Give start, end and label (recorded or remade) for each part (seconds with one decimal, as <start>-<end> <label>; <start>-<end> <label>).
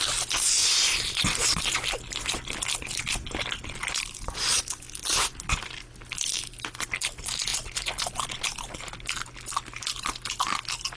0.0-11.0 recorded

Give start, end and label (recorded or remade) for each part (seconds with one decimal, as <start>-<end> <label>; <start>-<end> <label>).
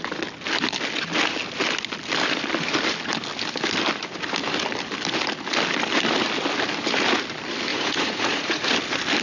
0.0-7.7 recorded; 7.7-8.6 remade; 8.6-9.2 recorded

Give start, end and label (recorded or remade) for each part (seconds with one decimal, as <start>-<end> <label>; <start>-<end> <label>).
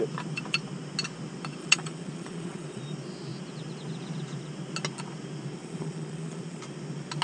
0.0-1.6 recorded; 1.6-2.8 remade; 2.8-5.6 recorded; 5.6-6.6 remade; 6.6-7.2 recorded